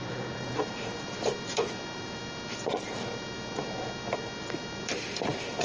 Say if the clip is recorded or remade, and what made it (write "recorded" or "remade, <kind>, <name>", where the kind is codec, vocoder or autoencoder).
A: remade, vocoder, BigVGAN v2